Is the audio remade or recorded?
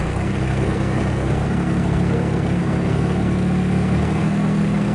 remade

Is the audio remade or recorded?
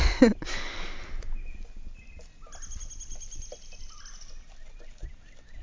recorded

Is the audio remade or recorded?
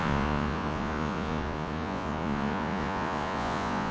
remade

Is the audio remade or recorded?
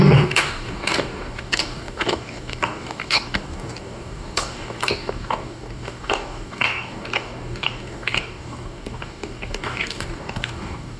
remade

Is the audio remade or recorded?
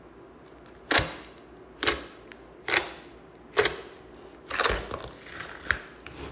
recorded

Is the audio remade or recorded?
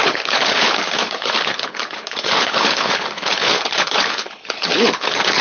remade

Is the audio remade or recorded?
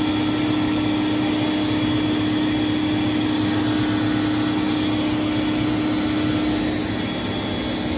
recorded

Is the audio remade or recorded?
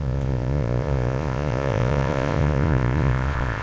remade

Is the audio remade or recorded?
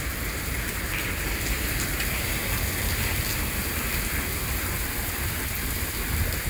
recorded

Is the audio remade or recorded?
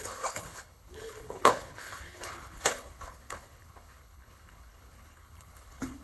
remade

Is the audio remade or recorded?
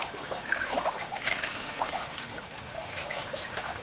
remade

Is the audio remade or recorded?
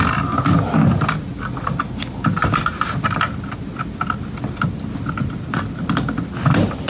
recorded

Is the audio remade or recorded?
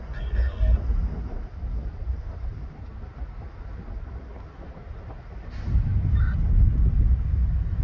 recorded